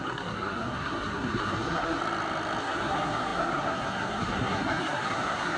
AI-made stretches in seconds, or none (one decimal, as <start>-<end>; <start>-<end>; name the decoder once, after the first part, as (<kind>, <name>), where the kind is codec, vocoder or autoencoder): 0.0-2.0 (codec, SNAC); 2.6-5.6